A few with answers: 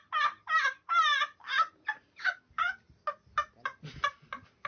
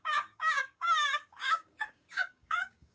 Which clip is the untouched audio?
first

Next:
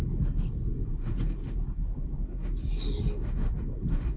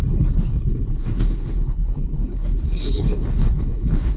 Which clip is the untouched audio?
first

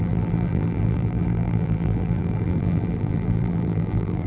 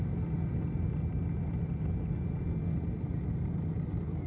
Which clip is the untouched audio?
second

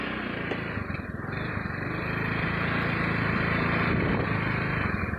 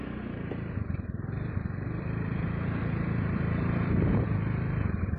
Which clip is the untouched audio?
first